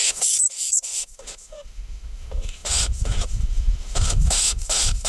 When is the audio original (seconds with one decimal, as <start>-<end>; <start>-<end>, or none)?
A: none